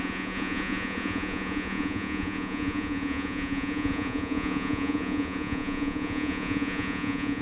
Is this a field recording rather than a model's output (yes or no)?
no